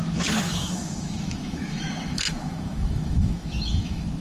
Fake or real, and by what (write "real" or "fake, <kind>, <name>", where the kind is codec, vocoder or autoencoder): fake, autoencoder, DAC-VAE